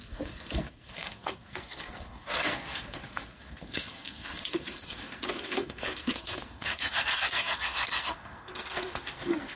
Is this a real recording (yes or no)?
no